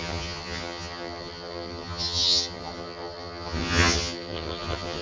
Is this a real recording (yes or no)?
no